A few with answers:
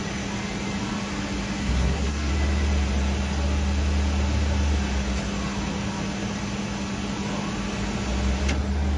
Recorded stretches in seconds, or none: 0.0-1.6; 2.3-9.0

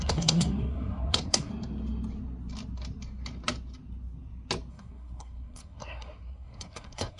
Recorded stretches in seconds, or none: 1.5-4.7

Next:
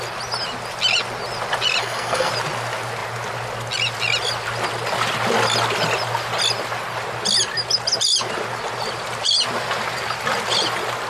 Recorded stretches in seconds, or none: 0.0-1.8; 2.3-11.1

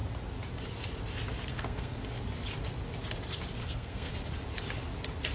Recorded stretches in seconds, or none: 0.0-1.5; 2.2-3.6; 4.1-5.3

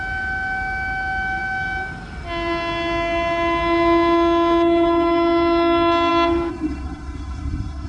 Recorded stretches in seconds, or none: 0.0-6.5

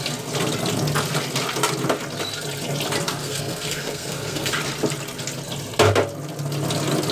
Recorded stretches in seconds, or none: 0.0-3.2; 4.5-7.1